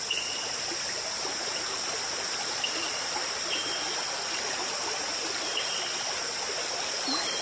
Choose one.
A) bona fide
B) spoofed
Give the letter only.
A